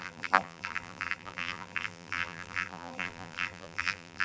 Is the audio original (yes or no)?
no